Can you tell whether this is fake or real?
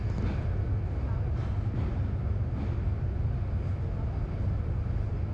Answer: real